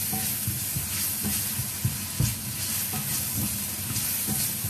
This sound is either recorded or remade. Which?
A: recorded